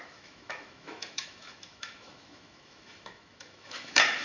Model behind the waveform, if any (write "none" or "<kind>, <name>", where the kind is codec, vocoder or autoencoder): autoencoder, DAC-VAE